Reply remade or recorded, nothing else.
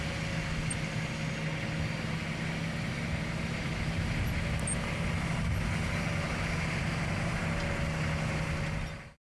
recorded